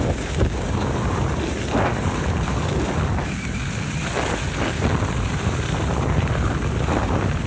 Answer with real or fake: real